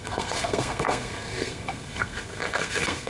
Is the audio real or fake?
fake